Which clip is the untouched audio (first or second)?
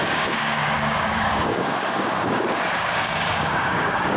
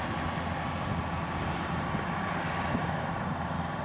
second